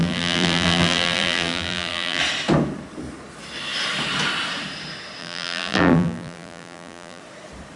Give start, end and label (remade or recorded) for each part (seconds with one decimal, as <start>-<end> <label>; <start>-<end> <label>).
0.0-2.2 remade; 2.2-5.2 recorded; 5.2-7.2 remade; 7.2-7.8 recorded